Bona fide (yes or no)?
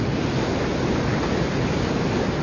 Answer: yes